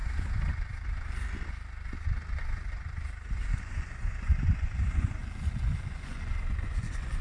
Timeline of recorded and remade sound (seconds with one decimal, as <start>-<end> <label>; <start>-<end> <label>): 0.0-3.6 recorded; 3.6-7.2 remade